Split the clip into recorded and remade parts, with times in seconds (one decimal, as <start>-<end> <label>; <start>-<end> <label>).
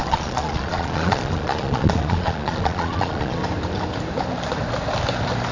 0.0-3.4 remade; 3.4-5.5 recorded